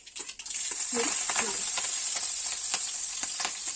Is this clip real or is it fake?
real